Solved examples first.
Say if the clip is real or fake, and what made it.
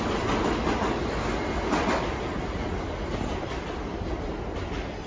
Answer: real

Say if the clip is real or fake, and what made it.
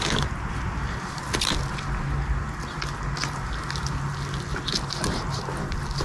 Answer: real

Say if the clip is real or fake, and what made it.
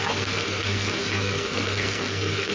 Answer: fake, codec, SNAC